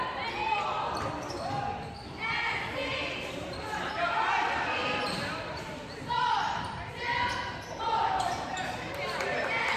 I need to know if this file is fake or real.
fake